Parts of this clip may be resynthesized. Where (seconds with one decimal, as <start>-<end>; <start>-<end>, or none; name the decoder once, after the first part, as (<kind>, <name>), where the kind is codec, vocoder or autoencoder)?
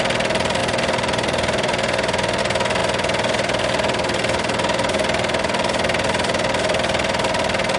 0.6-2.4 (vocoder, BigVGAN v2); 2.8-7.8